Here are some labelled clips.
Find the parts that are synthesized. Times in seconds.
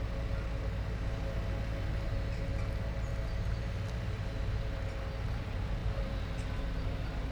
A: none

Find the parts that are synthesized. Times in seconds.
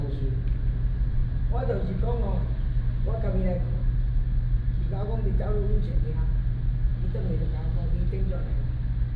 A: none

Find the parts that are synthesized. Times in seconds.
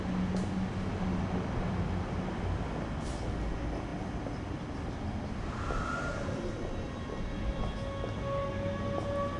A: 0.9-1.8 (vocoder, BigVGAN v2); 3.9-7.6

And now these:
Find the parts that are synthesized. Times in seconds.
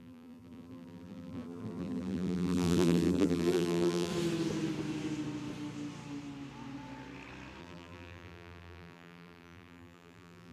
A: 0.0-4.1 (vocoder, BigVGAN v2); 7.6-10.5